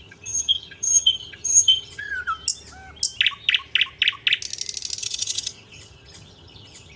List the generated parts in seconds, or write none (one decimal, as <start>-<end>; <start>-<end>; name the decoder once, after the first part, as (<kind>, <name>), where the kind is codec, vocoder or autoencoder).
0.0-2.1 (vocoder, HiFi-GAN); 5.0-7.0